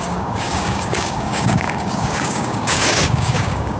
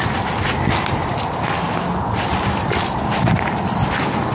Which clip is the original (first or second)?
second